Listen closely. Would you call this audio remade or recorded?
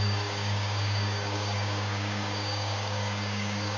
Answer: remade